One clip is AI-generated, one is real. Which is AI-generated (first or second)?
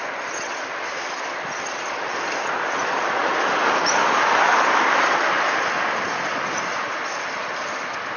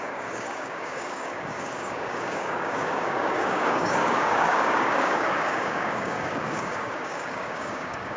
second